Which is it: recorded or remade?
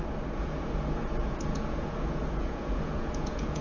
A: remade